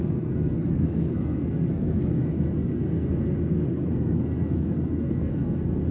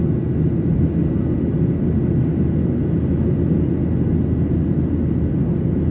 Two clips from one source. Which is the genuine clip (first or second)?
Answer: second